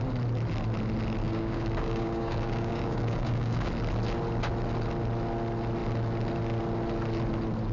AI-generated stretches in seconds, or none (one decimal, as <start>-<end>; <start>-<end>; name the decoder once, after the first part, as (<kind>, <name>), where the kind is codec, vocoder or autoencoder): 1.2-3.7 (codec, DAC)

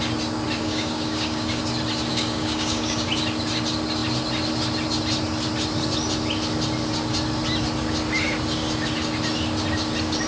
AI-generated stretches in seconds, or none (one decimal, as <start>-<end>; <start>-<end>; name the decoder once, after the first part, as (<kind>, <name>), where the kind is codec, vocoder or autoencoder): 0.6-1.6 (codec, DAC); 2.1-3.1

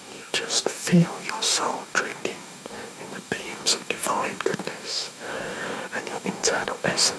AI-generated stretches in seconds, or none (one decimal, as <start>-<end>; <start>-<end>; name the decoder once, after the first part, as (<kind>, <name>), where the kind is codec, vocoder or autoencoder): 0.0-7.2 (codec, DAC)

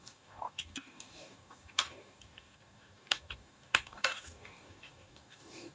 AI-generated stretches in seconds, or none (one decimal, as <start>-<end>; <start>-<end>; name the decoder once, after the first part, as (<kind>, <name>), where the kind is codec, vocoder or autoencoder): 0.0-5.7 (codec, DAC)